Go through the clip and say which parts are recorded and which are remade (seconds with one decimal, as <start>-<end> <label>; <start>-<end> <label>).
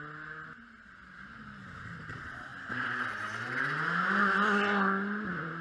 0.0-5.6 recorded